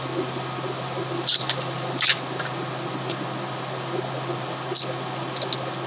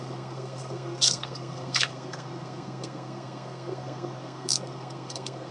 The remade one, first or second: second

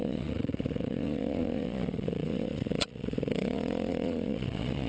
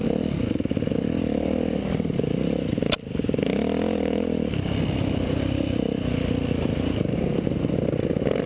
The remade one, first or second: first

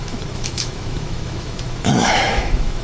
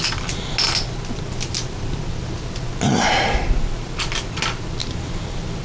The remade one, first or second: first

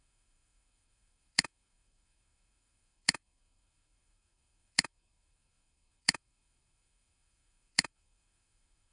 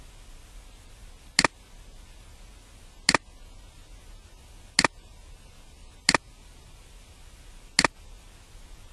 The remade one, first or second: first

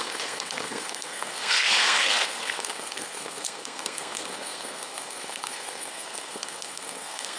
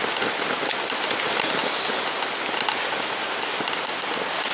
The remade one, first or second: first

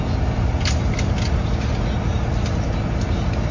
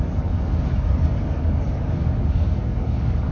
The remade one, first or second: second